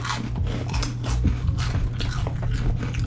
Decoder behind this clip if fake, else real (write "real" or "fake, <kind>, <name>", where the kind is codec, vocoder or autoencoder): real